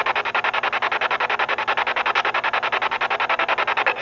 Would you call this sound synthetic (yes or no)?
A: no